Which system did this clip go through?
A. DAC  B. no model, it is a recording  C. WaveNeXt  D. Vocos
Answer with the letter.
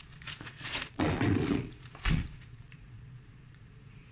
D